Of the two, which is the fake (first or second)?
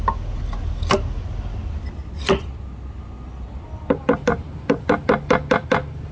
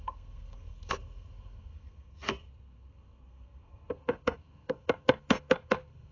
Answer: second